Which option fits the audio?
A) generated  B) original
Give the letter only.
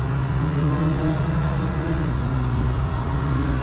A